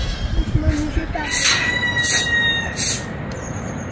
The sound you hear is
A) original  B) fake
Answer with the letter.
A